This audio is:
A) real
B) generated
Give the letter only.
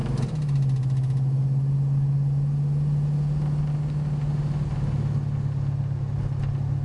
A